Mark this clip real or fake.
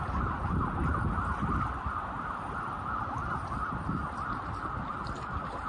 real